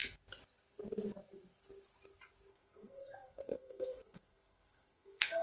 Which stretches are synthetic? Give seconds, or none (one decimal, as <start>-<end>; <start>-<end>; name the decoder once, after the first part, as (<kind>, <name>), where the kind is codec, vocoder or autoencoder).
2.5-5.4 (codec, SNAC)